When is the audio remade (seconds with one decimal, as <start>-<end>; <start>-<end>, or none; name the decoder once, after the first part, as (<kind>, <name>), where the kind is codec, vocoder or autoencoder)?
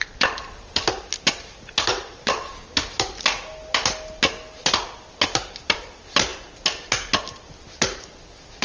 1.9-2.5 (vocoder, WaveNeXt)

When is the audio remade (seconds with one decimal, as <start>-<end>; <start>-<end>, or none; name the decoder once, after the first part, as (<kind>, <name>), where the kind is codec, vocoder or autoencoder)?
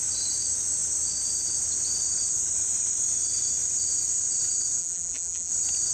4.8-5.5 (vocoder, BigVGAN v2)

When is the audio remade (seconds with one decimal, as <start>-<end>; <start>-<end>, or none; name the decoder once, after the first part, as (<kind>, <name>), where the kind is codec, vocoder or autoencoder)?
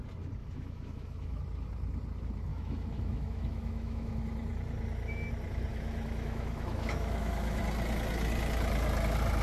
0.4-1.4 (autoencoder, DAC-VAE); 2.5-4.2; 5.7-7.6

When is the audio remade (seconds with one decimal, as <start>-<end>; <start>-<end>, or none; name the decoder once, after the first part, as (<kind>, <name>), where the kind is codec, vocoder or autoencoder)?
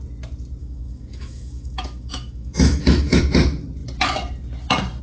0.6-3.2 (autoencoder, DAC-VAE)